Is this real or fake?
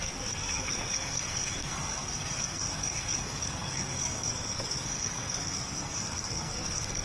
fake